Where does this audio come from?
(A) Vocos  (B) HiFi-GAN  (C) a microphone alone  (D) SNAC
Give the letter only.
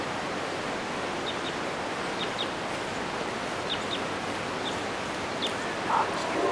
C